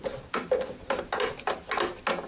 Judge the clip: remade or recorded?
recorded